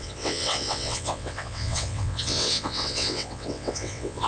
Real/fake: fake